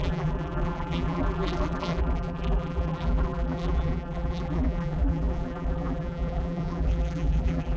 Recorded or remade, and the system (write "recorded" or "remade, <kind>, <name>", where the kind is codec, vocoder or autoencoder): remade, vocoder, BigVGAN v2